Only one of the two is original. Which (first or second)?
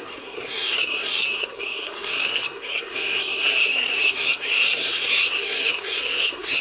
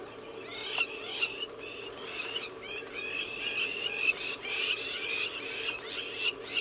second